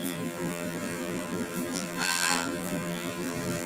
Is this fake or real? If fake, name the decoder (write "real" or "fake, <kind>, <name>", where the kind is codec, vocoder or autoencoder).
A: fake, vocoder, BigVGAN v2